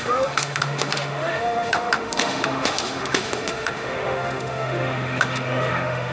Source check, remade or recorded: remade